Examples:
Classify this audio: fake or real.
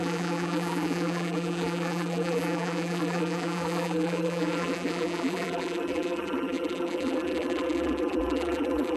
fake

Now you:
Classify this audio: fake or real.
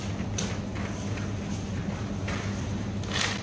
real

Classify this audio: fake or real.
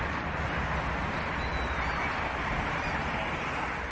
real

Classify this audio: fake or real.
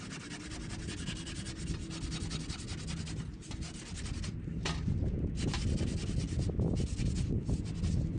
real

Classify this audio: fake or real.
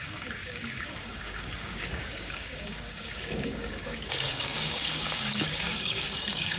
fake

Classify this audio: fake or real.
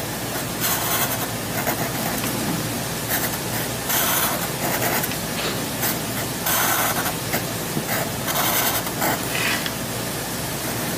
real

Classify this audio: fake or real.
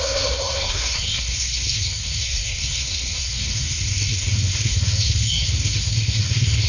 fake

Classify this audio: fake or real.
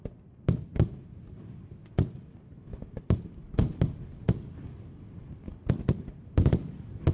real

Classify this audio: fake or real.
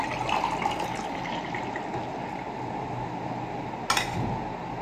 real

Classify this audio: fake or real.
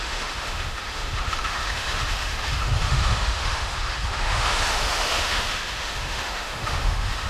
fake